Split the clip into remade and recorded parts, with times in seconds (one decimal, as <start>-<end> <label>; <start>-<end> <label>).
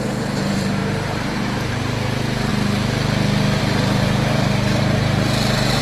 0.0-2.5 remade; 2.5-3.6 recorded; 3.6-5.8 remade